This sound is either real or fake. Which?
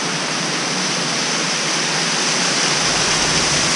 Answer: real